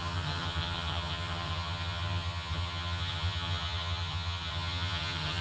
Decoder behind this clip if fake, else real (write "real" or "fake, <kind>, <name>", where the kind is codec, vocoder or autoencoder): fake, vocoder, HiFi-GAN